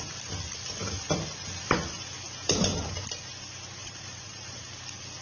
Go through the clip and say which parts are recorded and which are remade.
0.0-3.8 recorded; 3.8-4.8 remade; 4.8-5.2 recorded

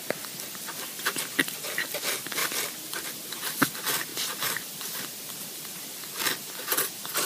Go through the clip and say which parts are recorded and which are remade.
0.0-2.4 recorded; 2.4-3.4 remade; 3.4-4.1 recorded; 4.1-4.8 remade; 4.8-7.3 recorded

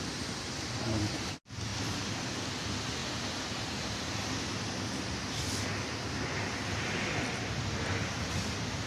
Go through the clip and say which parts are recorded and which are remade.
0.0-1.7 recorded; 1.7-2.6 remade; 2.6-8.9 recorded

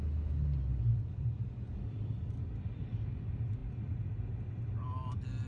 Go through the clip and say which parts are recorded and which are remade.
0.0-0.9 recorded; 0.9-3.0 remade; 3.0-5.5 recorded

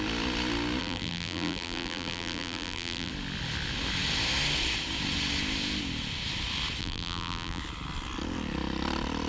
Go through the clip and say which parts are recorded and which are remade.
0.0-0.8 recorded; 0.8-3.1 remade; 3.1-6.8 recorded; 6.8-7.6 remade; 7.6-9.3 recorded

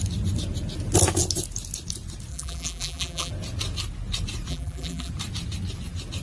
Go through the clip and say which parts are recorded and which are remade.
0.0-2.3 recorded; 2.3-3.3 remade; 3.3-4.5 recorded; 4.5-5.1 remade; 5.1-6.2 recorded

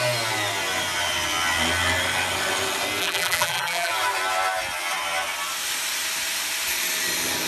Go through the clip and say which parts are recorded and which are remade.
0.0-3.0 recorded; 3.0-3.9 remade; 3.9-7.5 recorded